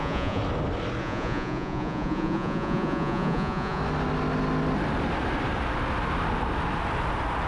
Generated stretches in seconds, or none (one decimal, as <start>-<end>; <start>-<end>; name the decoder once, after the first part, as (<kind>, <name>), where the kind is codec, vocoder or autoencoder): 0.0-0.4 (vocoder, Vocos); 1.0-3.8